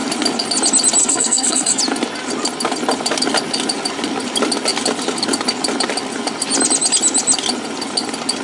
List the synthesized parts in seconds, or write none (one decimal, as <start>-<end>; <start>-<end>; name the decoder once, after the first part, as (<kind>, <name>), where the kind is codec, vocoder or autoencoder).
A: 1.0-1.8 (codec, SNAC)